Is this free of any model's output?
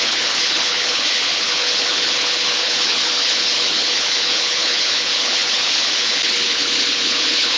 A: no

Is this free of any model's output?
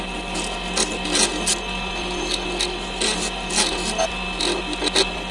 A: yes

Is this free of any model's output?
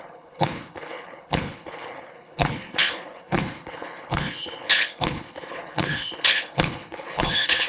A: no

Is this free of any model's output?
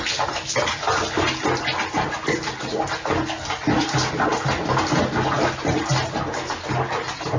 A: yes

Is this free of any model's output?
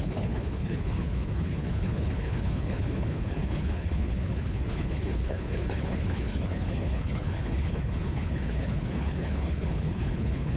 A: no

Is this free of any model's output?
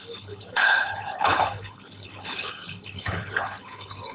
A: no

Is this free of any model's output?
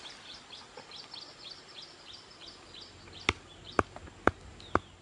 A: yes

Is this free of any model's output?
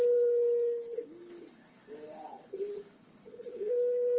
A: no